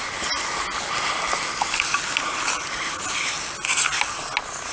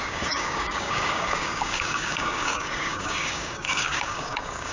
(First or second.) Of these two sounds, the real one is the first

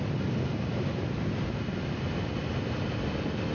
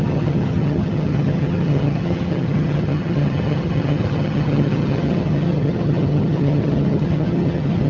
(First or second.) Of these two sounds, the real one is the first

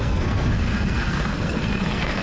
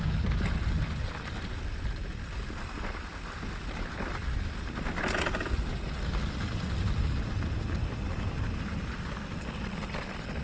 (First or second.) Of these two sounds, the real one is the second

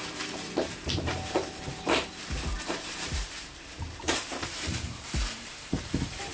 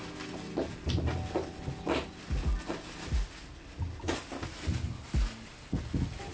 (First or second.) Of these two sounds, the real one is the second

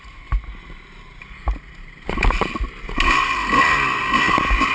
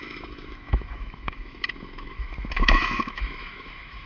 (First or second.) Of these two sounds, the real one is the first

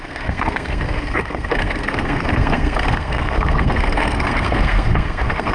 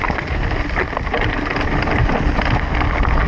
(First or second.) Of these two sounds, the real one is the second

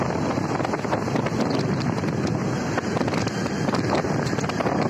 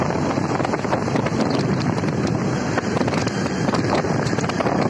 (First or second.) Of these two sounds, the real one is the first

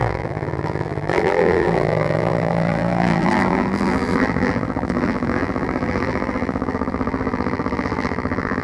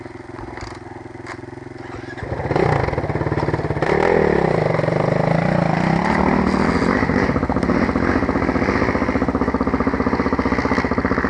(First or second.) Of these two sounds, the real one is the second